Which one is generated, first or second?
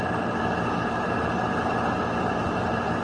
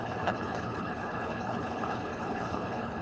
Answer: second